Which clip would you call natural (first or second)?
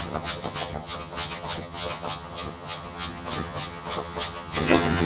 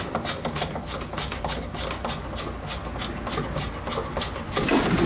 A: second